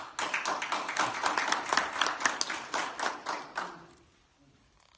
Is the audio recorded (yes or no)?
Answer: yes